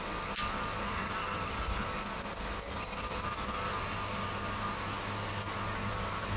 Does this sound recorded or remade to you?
recorded